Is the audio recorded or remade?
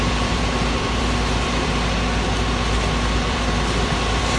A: remade